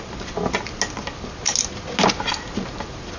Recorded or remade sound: recorded